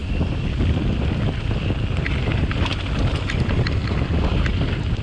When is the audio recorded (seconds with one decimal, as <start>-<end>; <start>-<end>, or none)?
0.0-5.0